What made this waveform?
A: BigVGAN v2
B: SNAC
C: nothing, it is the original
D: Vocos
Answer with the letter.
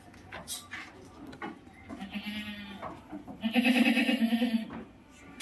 C